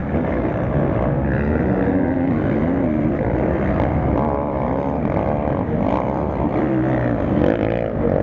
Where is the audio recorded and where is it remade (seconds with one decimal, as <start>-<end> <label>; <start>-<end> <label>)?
0.0-0.5 remade; 0.5-8.2 recorded